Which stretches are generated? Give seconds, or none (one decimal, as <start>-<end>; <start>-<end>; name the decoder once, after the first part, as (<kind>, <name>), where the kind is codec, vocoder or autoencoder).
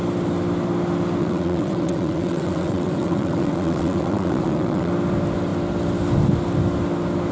1.2-4.9 (vocoder, WaveNeXt)